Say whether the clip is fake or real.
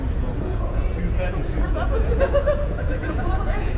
fake